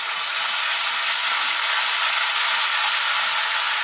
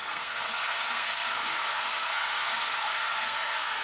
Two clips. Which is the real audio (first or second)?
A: first